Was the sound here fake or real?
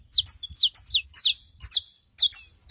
real